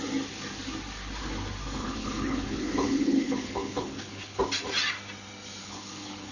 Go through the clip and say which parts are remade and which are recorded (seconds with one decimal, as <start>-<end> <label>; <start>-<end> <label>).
0.0-1.8 recorded; 1.8-4.4 remade; 4.4-5.6 recorded; 5.6-6.3 remade